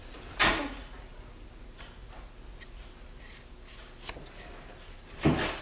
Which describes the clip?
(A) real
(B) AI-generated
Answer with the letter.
A